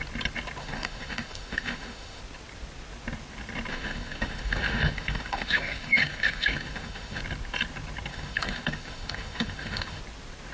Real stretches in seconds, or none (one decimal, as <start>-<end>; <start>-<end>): 0.0-0.6; 2.2-3.7; 7.2-8.1; 10.0-10.5